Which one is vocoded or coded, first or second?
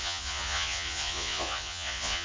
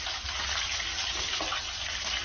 first